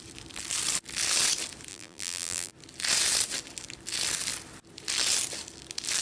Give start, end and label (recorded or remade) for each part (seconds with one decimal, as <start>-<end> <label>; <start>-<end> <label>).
0.0-1.7 recorded; 1.7-2.5 remade; 2.5-6.0 recorded